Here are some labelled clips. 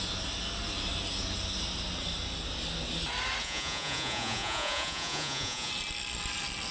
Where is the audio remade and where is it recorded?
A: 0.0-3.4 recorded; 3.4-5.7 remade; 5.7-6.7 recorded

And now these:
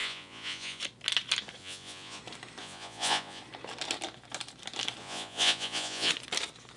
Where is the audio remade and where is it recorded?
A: 0.0-0.8 remade; 0.8-1.6 recorded; 1.6-2.2 remade; 2.2-2.6 recorded; 2.6-3.4 remade; 3.4-5.0 recorded; 5.0-6.1 remade; 6.1-6.8 recorded

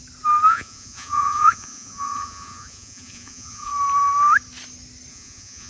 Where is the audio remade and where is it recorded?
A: 0.0-0.5 recorded; 0.5-3.7 remade; 3.7-5.1 recorded; 5.1-5.7 remade

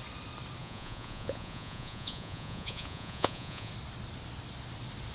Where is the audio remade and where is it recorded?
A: 0.0-0.6 recorded; 0.6-3.7 remade; 3.7-5.1 recorded

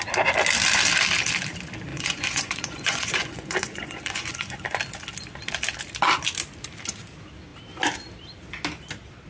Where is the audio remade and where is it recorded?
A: 0.0-1.9 recorded; 1.9-4.8 remade; 4.8-9.3 recorded

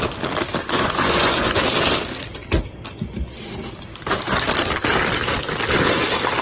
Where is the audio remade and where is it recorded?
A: 0.0-0.6 recorded; 0.6-1.6 remade; 1.6-6.4 recorded